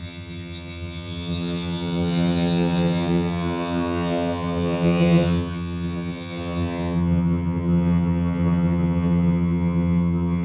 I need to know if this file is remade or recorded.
remade